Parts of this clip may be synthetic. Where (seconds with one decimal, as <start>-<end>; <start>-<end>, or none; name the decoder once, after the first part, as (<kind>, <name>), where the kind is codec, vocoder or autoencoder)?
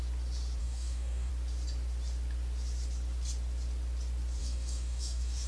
0.6-1.3 (codec, DAC); 4.4-5.5